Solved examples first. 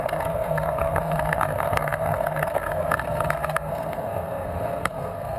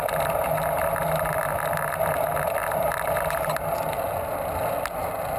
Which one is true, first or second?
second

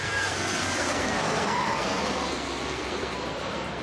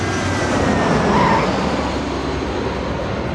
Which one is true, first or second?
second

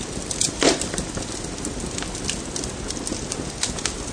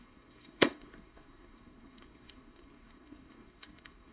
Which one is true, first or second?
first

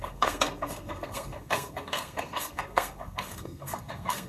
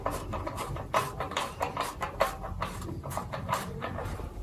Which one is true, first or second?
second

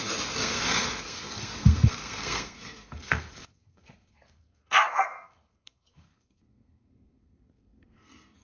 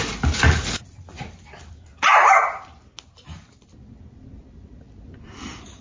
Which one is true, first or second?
second